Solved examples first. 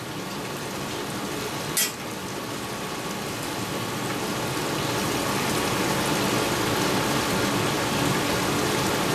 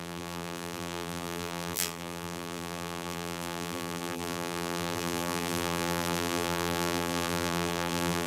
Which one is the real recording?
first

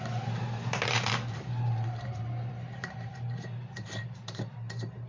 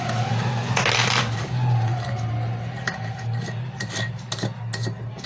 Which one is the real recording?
second